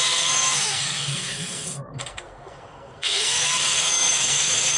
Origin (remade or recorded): remade